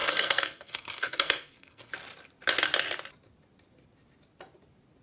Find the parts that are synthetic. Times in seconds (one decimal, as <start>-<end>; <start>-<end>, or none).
0.0-1.9